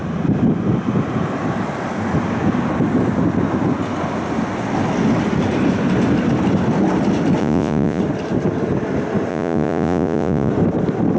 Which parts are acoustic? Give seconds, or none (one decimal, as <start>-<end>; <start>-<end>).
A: 0.0-7.4; 8.0-9.3; 10.5-11.2